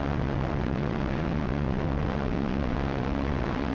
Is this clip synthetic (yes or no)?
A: yes